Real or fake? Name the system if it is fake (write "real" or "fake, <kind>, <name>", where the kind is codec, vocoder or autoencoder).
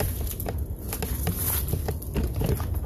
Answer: real